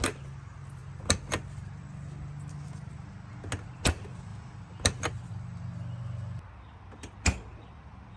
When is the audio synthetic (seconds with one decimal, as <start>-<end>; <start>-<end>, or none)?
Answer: none